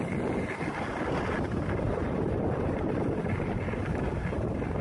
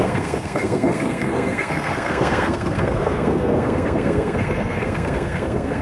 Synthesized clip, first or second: second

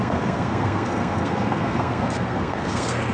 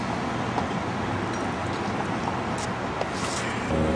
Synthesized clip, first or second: first